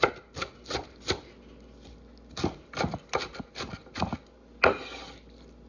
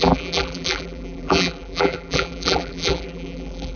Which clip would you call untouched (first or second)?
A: first